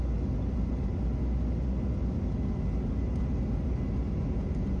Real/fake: real